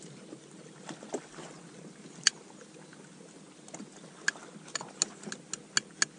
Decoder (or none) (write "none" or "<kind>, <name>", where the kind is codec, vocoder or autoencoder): none